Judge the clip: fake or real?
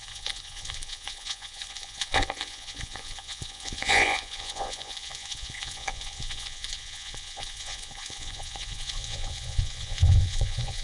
fake